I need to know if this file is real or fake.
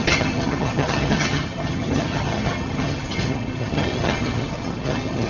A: fake